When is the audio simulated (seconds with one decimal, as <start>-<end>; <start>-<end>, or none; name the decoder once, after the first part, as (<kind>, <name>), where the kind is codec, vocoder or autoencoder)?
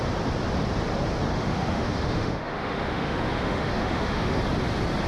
1.3-4.4 (autoencoder, DAC-VAE)